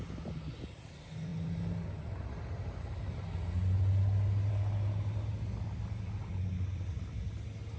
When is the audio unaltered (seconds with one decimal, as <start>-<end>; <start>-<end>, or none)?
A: 0.0-7.8